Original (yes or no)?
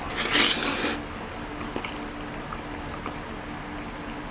yes